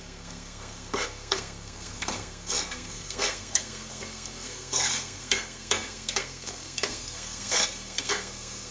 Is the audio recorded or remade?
remade